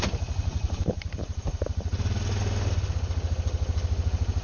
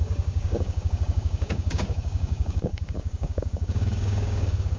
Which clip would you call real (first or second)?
first